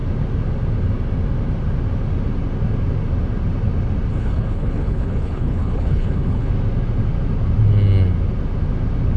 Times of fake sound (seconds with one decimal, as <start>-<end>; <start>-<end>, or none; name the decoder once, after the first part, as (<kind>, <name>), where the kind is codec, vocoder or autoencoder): 4.1-6.5 (codec, HILCodec)